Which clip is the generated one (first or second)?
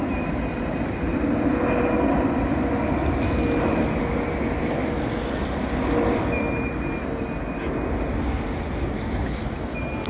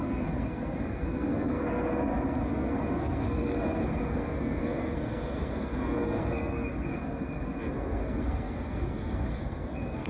second